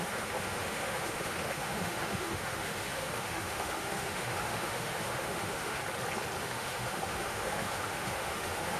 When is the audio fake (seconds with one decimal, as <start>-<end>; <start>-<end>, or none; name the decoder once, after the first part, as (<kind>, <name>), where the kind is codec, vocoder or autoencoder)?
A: 0.0-5.8 (autoencoder, DAC-VAE); 6.4-8.8